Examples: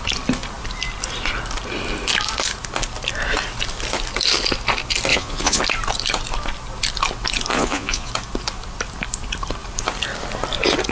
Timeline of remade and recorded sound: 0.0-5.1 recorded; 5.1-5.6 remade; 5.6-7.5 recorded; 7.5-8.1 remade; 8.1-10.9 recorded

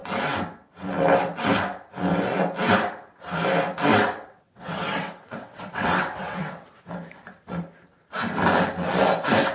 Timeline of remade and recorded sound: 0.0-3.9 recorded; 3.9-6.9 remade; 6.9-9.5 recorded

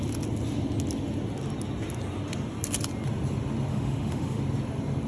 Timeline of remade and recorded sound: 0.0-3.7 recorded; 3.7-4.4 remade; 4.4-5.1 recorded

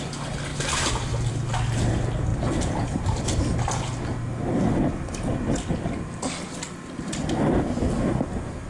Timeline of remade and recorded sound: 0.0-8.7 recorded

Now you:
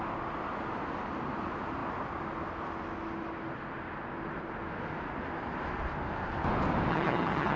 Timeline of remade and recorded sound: 0.0-6.9 recorded; 6.9-7.6 remade